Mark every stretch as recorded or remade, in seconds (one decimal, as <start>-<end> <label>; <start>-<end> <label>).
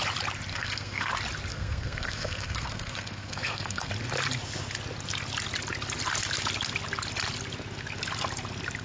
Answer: 0.0-0.5 recorded; 0.5-1.1 remade; 1.1-1.5 recorded; 1.5-3.9 remade; 3.9-8.8 recorded